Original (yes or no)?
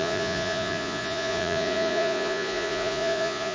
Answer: no